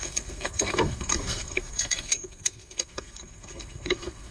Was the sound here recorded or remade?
remade